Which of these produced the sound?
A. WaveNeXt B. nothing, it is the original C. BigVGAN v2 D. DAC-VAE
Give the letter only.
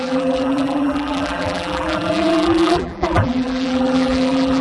C